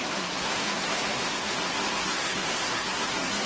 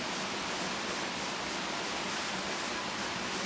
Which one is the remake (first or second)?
first